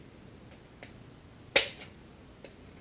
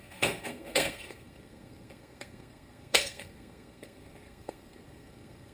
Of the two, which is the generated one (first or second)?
second